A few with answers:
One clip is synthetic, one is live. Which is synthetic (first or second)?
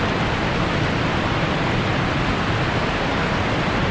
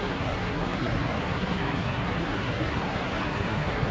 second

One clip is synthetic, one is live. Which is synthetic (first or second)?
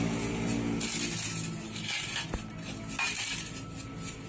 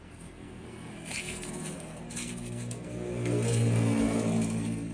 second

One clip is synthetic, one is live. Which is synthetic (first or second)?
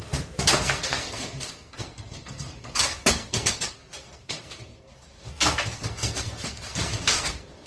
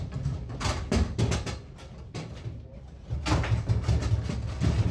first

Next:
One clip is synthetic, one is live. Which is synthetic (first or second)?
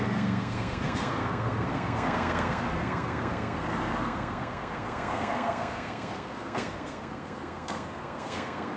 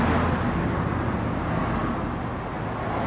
first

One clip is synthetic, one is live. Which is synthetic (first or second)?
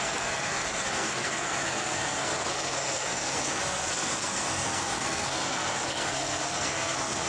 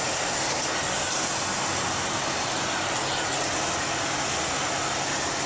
first